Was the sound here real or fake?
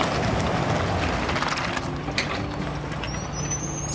real